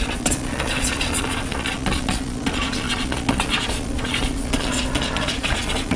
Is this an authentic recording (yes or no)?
no